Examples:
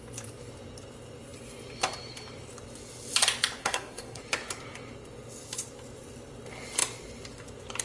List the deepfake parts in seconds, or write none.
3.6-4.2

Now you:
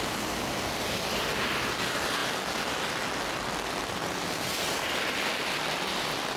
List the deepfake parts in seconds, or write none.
none

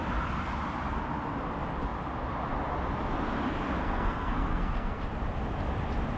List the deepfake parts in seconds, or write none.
3.8-5.0

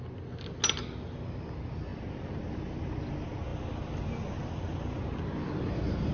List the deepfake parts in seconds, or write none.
none

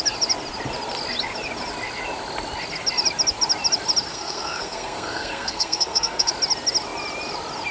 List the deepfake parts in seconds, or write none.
4.1-6.3

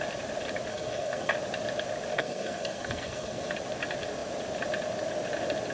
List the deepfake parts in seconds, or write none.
0.7-1.3; 2.1-3.5